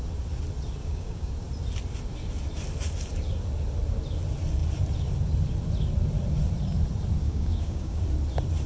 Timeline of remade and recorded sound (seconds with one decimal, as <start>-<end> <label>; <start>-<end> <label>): 0.0-0.8 recorded; 0.8-1.3 remade; 1.3-7.2 recorded; 7.2-8.0 remade; 8.0-8.7 recorded